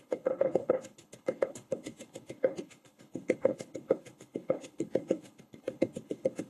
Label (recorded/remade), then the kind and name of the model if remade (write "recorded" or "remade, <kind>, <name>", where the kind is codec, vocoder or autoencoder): remade, codec, HILCodec